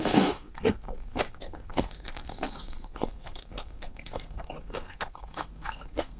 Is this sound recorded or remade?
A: remade